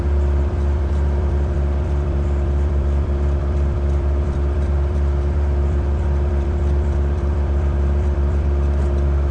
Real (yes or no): no